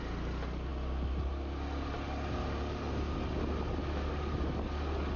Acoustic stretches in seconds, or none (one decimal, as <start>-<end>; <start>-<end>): 0.0-5.2